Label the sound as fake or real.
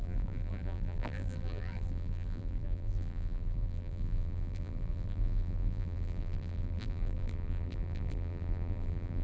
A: fake